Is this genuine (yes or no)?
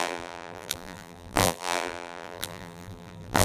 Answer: no